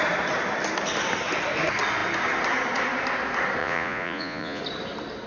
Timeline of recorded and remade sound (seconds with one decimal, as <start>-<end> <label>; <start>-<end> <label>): 0.0-3.6 recorded; 3.6-4.6 remade; 4.6-5.3 recorded